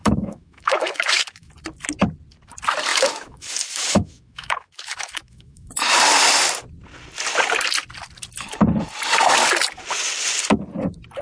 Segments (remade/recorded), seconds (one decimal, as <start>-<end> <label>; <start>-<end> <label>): 0.0-1.5 remade; 1.5-2.9 recorded; 2.9-5.7 remade; 5.7-11.2 recorded